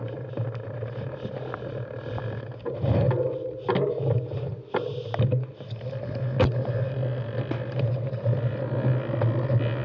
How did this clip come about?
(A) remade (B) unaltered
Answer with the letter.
B